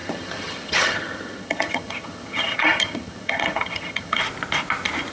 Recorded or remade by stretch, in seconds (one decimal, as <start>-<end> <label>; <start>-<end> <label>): 0.0-4.2 remade; 4.2-5.1 recorded